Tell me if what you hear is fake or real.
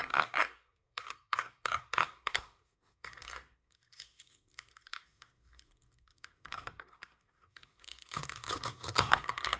fake